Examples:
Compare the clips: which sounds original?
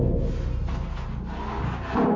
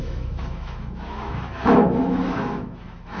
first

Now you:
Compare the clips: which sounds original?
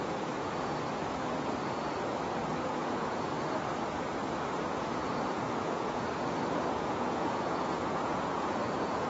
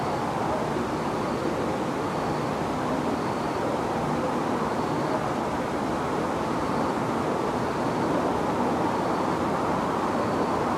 second